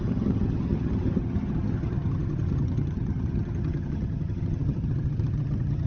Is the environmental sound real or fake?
fake